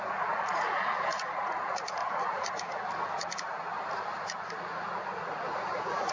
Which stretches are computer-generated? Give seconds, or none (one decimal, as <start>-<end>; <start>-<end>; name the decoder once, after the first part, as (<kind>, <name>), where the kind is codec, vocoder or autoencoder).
0.0-2.0 (vocoder, Vocos); 4.6-6.1